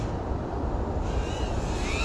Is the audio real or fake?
fake